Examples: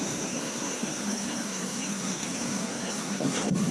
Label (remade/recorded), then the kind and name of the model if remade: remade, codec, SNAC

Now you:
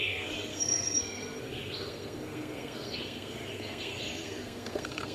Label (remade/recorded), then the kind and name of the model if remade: remade, codec, SNAC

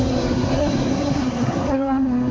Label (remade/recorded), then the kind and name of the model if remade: remade, codec, SNAC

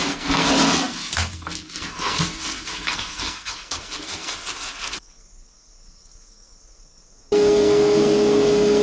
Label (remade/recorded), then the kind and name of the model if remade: remade, codec, SNAC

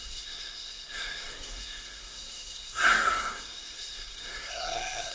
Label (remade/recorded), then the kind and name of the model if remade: remade, codec, SNAC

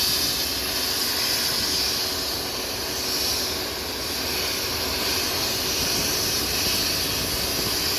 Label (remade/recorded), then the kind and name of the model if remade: recorded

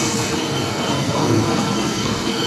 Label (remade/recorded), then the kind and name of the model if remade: remade, codec, SNAC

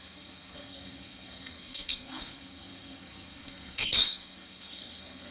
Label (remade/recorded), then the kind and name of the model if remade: remade, codec, SNAC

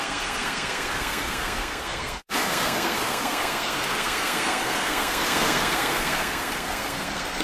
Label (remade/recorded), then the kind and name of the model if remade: remade, codec, SNAC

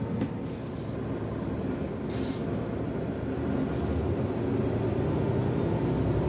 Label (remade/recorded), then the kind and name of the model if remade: recorded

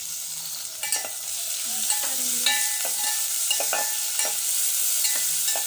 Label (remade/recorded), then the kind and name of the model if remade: recorded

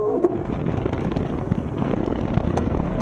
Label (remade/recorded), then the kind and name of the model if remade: remade, codec, SNAC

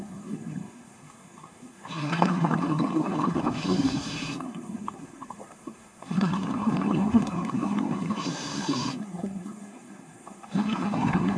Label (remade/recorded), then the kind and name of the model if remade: remade, codec, SNAC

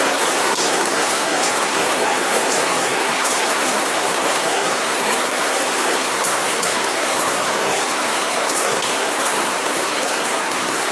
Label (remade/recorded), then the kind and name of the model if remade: remade, codec, SNAC